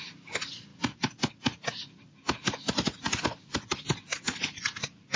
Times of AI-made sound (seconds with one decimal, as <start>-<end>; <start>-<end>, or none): none